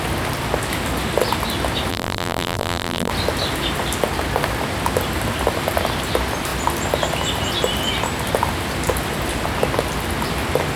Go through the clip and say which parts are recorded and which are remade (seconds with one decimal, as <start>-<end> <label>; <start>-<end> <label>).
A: 0.0-1.9 recorded; 1.9-3.1 remade; 3.1-10.8 recorded